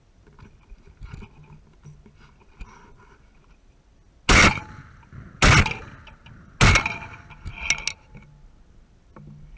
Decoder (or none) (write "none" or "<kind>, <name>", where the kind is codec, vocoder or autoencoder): none